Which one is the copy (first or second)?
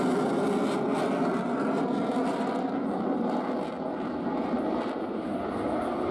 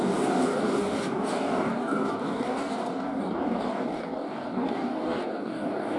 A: second